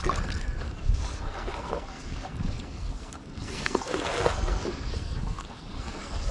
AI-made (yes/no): yes